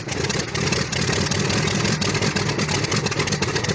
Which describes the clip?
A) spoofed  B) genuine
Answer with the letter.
B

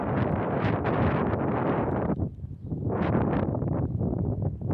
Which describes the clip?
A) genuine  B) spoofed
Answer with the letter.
B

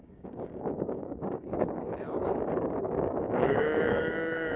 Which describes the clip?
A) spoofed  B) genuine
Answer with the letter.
A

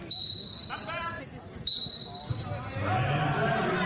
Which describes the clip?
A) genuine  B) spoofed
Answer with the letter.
A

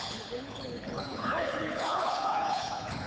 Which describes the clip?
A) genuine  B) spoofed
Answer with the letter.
B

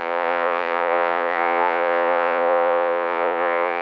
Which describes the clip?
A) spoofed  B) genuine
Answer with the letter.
A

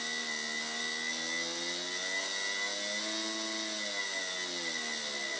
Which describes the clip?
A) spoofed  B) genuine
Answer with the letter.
B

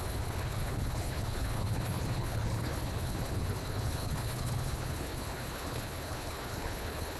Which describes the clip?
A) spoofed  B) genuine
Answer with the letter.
A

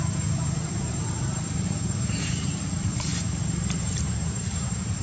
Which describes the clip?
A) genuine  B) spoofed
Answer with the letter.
B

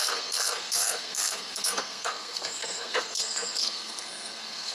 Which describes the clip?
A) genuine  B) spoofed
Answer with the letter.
B